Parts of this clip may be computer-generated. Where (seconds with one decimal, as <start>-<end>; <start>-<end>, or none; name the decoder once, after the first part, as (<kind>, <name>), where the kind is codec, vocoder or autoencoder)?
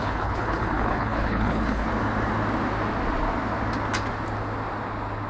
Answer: 0.0-1.9 (codec, HILCodec)